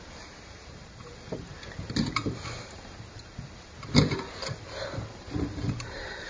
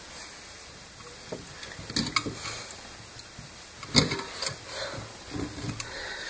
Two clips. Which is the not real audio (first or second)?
first